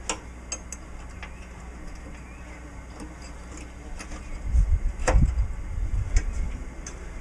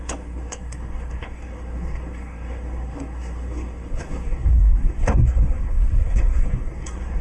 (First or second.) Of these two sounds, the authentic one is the first